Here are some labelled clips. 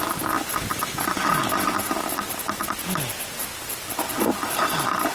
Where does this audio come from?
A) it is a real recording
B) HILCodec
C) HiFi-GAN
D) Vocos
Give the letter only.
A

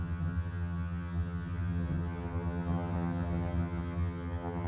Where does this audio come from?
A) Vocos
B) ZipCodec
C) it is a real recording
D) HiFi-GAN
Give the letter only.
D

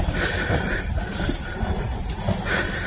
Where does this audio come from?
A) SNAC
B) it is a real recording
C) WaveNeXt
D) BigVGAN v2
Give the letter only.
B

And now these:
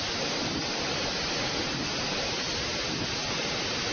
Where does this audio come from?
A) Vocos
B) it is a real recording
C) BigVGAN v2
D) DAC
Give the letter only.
B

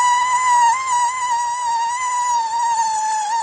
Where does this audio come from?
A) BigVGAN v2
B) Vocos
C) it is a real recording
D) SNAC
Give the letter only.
C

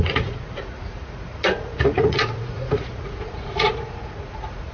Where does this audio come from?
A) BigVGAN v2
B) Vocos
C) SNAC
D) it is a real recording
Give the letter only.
B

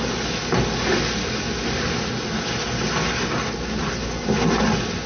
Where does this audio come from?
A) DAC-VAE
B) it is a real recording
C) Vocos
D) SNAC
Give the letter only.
B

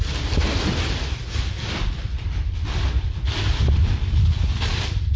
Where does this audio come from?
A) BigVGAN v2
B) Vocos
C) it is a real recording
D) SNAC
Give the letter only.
A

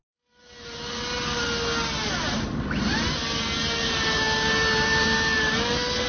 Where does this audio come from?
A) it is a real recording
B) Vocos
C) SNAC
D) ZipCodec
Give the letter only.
A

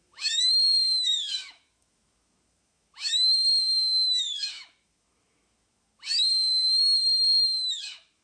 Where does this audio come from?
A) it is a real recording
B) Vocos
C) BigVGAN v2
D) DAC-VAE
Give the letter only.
D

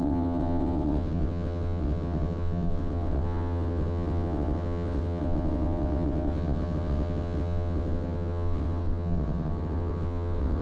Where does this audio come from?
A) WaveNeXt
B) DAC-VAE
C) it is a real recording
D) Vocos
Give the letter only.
A